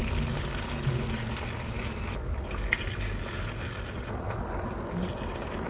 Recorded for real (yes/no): yes